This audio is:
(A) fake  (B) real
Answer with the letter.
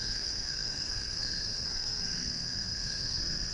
A